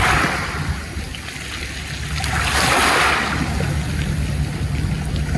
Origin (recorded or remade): recorded